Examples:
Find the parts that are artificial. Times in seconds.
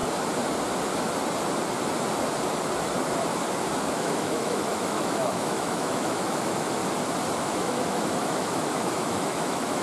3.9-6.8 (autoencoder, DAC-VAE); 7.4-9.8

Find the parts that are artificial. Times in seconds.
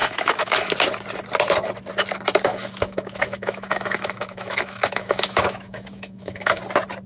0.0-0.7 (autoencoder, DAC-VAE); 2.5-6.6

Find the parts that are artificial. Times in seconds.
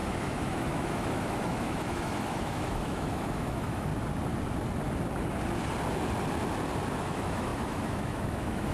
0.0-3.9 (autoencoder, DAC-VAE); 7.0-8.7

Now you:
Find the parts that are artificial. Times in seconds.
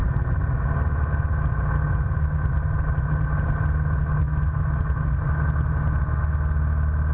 none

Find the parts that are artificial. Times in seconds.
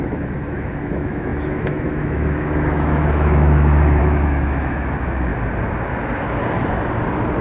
0.0-5.3 (autoencoder, DAC-VAE)